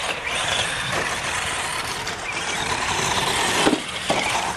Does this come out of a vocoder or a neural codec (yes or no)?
yes